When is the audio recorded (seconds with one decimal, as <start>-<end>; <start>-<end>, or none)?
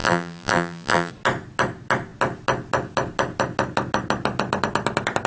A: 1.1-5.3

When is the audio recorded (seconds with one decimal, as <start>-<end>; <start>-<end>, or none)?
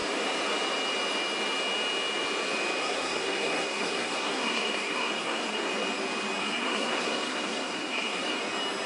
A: 0.0-2.8; 5.7-6.4; 8.4-8.9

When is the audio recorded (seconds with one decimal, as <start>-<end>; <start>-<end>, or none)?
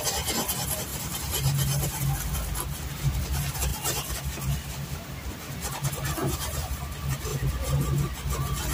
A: 0.0-0.9; 2.0-6.2; 6.8-7.3; 8.0-8.7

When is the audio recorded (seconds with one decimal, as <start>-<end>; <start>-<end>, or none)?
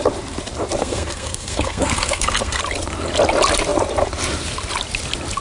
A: 0.0-0.8; 2.6-5.4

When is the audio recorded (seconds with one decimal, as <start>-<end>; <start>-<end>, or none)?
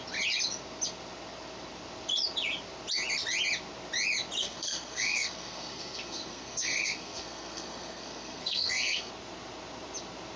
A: 0.0-4.4; 9.1-10.4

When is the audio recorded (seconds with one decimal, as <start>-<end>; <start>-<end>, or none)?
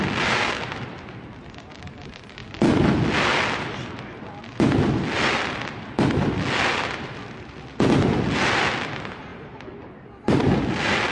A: 0.0-11.1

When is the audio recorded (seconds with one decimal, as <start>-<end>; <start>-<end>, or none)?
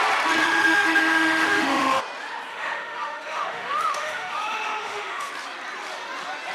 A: 0.0-0.4; 2.0-2.5; 5.3-6.5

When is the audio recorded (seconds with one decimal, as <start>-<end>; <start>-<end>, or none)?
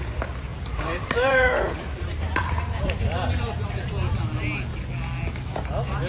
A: 0.0-0.5; 4.2-6.1